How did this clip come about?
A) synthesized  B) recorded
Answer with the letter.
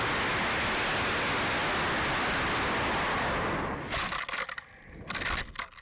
B